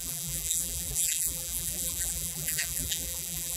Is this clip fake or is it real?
fake